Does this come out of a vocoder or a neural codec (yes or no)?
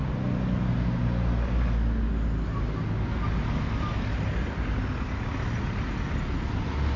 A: no